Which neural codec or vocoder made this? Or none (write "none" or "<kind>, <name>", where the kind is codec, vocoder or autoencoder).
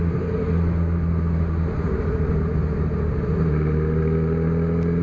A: none